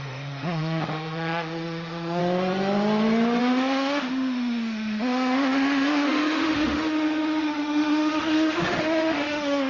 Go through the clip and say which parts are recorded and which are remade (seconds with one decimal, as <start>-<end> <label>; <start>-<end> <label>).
0.0-2.2 remade; 2.2-3.4 recorded; 3.4-9.7 remade